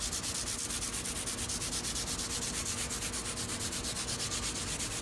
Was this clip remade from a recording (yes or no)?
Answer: no